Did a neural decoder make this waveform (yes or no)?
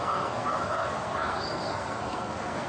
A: yes